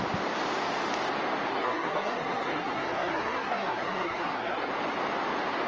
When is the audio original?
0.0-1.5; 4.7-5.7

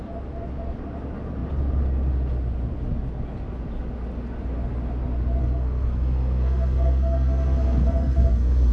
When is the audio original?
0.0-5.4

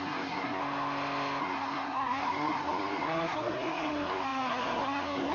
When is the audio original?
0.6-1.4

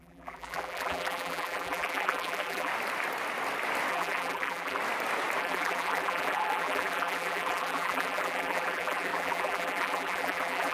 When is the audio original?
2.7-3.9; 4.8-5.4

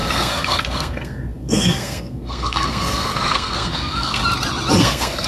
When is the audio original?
4.2-4.8

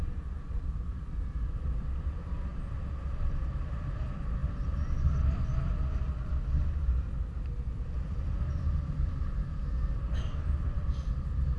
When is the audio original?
2.5-3.5; 4.4-7.6